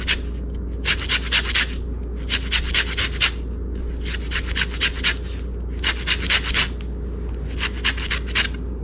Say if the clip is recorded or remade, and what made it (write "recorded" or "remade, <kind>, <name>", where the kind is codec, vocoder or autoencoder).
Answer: recorded